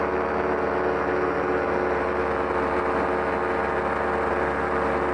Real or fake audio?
real